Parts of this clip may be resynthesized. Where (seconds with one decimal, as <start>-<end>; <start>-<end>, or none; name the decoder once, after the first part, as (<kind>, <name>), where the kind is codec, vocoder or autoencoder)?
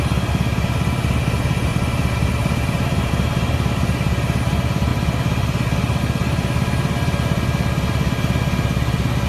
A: none